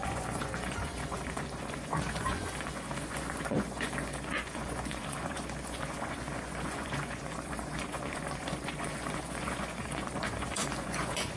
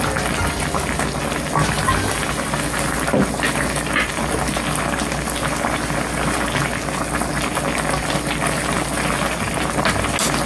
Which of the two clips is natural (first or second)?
second